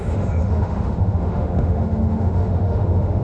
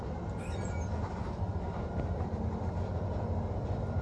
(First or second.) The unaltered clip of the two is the second